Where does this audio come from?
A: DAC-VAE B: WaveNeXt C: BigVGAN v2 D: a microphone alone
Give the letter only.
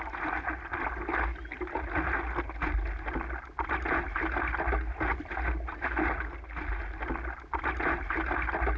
D